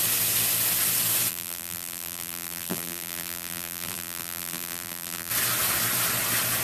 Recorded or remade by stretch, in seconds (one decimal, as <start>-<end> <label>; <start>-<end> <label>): 0.0-1.3 recorded; 1.3-5.3 remade; 5.3-6.6 recorded